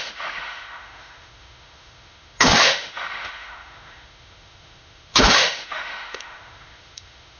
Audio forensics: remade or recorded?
remade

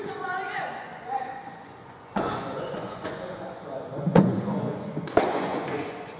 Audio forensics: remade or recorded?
remade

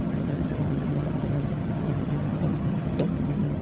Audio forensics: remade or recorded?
remade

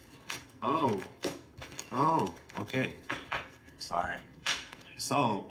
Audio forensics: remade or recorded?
remade